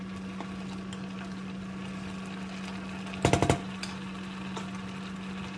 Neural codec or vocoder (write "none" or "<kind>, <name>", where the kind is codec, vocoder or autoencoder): none